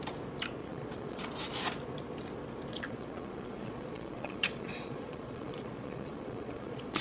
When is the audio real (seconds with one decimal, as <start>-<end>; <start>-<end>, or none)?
0.0-0.6; 1.3-2.7